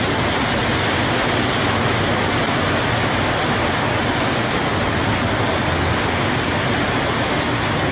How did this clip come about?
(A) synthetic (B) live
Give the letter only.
B